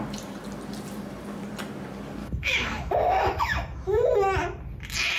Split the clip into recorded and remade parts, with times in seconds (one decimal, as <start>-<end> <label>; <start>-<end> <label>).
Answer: 0.0-2.2 recorded; 2.2-4.2 remade; 4.2-5.2 recorded